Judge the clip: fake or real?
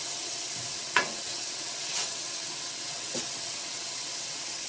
fake